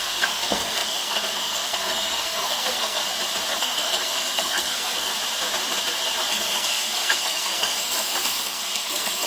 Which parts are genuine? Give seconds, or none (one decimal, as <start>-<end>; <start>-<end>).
3.0-3.6; 5.1-6.3